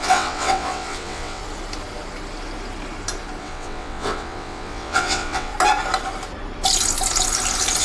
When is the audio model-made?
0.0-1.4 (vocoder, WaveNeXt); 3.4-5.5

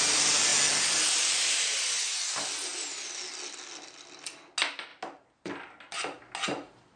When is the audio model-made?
none

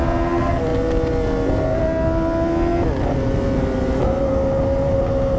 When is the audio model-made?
none

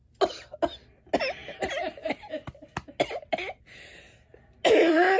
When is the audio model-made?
none